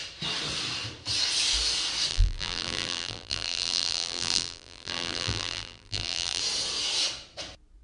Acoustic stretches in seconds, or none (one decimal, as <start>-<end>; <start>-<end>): 0.0-2.1; 6.4-7.8